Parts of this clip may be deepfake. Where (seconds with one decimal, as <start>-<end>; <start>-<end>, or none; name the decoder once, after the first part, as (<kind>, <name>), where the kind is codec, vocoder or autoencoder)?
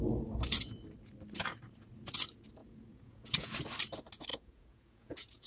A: 2.6-3.6 (vocoder, Vocos); 4.3-5.5